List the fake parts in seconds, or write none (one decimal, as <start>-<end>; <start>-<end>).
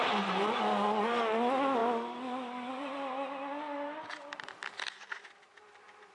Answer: none